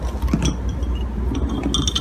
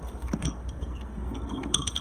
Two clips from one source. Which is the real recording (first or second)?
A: first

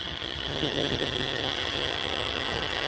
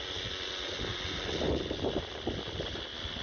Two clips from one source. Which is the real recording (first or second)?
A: second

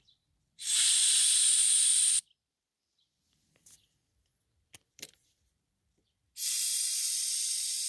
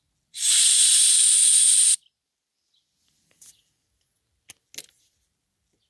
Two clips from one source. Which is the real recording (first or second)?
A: second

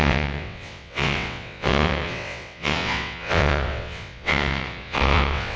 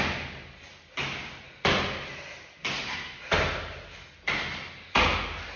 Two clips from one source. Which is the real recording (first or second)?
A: second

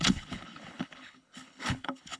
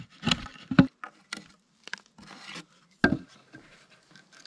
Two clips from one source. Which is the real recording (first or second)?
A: second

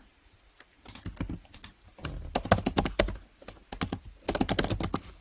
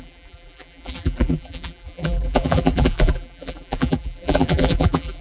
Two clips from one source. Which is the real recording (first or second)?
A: first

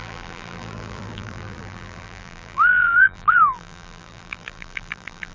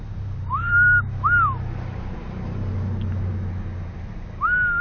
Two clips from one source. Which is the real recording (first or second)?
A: second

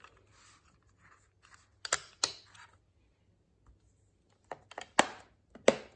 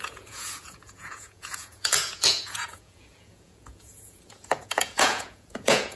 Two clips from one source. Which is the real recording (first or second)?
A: first